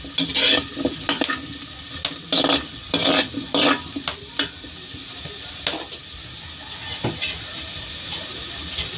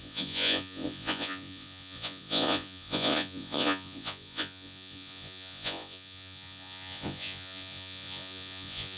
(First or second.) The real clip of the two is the first